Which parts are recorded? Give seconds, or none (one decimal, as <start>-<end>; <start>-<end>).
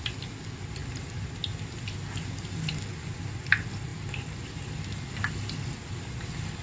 0.0-6.6